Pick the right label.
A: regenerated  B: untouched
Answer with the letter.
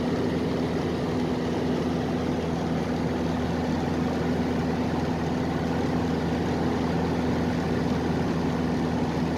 B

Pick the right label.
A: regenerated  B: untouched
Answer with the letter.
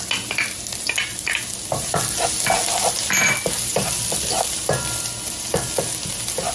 B